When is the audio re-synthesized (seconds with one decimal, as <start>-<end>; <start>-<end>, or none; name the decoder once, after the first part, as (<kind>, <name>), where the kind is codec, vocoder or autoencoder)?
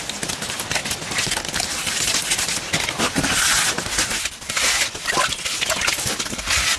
none